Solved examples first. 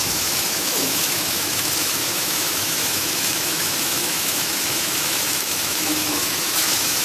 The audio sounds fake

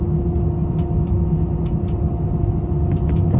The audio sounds real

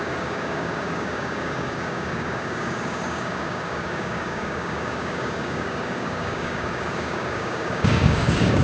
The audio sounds fake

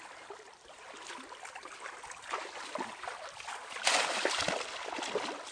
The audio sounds real